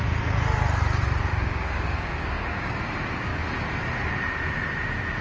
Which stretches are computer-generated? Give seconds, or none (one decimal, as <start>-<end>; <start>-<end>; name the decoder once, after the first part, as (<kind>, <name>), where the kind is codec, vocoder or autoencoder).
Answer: 1.3-2.8 (codec, DAC)